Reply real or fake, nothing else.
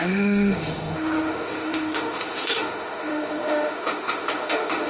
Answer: fake